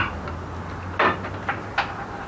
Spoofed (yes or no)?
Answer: no